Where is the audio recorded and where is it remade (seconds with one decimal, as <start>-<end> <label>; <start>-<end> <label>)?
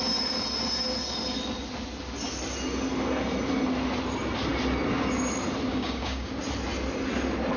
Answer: 0.0-5.7 recorded; 5.7-6.3 remade; 6.3-7.6 recorded